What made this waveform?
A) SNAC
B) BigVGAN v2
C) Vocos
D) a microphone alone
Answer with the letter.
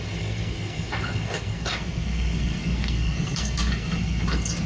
A